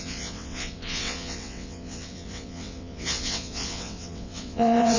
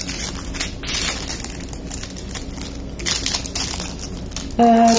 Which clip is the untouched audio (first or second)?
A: second